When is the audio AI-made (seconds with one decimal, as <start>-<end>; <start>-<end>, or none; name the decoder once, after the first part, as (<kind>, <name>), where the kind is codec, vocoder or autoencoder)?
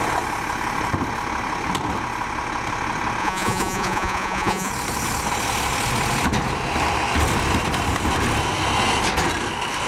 3.2-4.7 (vocoder, Vocos)